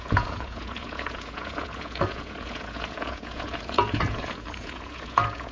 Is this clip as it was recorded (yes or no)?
no